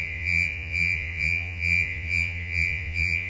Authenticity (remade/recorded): remade